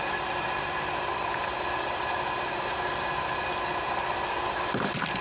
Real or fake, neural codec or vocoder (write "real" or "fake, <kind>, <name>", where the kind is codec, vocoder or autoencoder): real